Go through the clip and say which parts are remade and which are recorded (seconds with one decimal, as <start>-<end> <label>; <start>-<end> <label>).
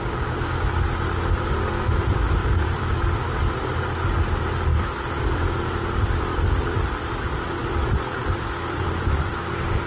0.0-2.4 recorded; 2.4-3.2 remade; 3.2-9.9 recorded